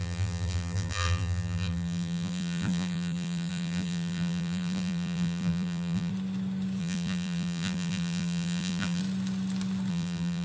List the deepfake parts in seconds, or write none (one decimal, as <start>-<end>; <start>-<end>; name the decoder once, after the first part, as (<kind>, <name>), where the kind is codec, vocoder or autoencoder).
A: 0.0-6.1 (vocoder, BigVGAN v2); 6.8-9.0; 9.9-10.4